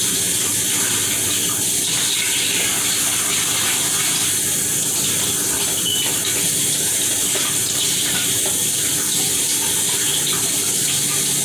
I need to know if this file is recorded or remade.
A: recorded